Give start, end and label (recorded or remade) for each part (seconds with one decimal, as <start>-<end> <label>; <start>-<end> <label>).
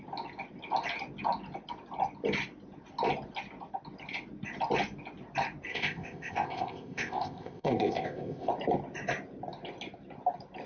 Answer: 0.0-5.7 recorded; 5.7-8.5 remade; 8.5-10.7 recorded